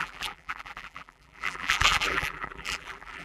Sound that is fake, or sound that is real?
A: fake